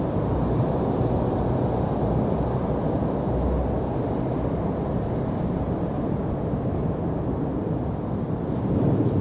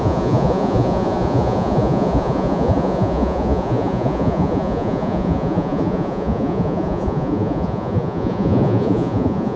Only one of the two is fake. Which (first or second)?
second